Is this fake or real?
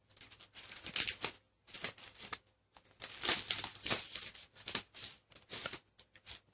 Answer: real